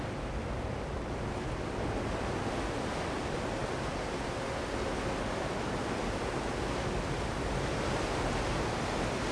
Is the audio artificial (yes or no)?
no